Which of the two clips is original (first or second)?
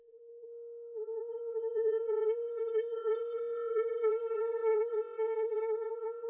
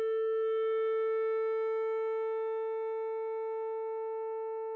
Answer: second